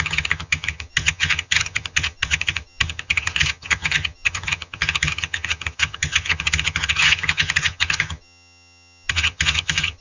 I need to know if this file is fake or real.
fake